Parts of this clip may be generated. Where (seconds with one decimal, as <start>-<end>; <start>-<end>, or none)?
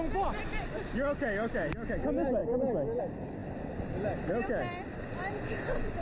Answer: none